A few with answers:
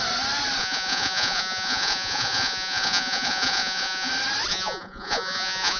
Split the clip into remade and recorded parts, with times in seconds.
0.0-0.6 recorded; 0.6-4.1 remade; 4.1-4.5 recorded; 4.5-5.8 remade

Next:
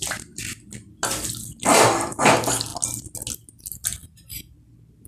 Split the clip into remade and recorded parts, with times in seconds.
0.0-5.1 recorded

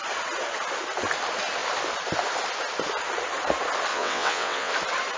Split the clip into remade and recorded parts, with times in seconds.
0.0-3.9 recorded; 3.9-4.7 remade; 4.7-5.2 recorded

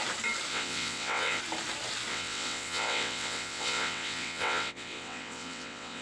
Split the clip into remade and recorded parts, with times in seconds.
0.0-0.5 recorded; 0.5-1.4 remade; 1.4-2.1 recorded; 2.1-6.0 remade